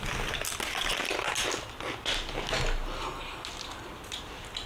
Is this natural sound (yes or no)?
yes